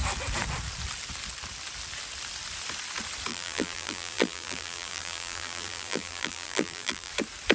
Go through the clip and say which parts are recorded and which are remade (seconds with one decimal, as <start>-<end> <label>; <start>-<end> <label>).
0.0-3.3 recorded; 3.3-7.1 remade; 7.1-7.5 recorded

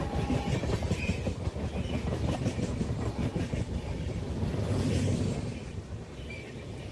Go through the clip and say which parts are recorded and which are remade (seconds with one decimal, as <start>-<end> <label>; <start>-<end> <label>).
0.0-2.0 recorded; 2.0-6.1 remade; 6.1-6.9 recorded